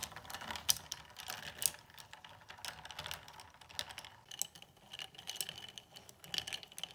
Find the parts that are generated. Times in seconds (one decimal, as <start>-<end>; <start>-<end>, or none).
none

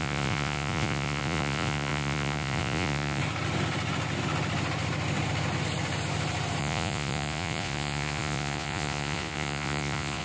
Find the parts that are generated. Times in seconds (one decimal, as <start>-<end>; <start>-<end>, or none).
0.0-3.2; 6.6-10.2

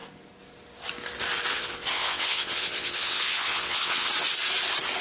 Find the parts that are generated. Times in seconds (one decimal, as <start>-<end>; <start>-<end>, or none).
1.5-4.1

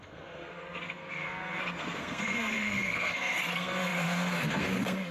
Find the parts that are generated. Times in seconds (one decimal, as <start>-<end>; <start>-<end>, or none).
0.0-5.1

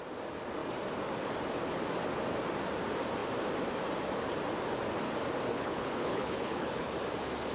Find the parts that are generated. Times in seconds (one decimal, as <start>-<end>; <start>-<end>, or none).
5.5-6.9

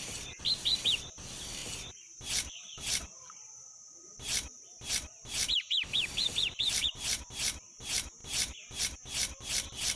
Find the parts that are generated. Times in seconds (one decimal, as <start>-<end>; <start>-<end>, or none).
0.0-10.0

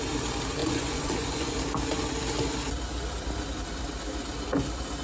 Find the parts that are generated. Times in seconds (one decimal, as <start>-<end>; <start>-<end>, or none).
0.6-1.5

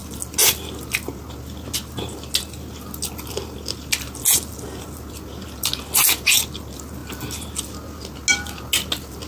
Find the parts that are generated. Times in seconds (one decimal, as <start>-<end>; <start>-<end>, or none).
none